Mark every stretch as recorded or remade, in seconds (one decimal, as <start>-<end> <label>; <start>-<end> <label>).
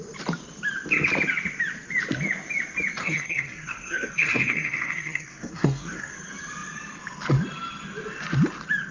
0.0-3.0 recorded; 3.0-6.1 remade; 6.1-8.9 recorded